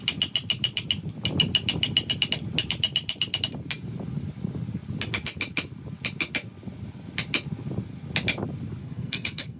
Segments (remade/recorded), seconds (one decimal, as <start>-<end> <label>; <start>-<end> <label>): 0.0-8.8 recorded; 8.8-9.6 remade